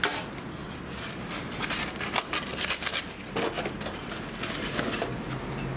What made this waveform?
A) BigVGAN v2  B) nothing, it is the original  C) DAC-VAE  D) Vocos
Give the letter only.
B